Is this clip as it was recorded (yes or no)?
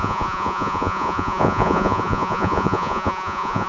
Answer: no